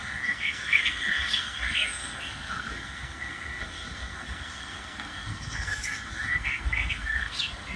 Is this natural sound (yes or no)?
no